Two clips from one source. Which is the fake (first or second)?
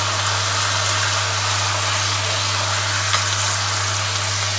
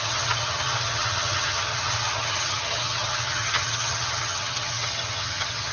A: second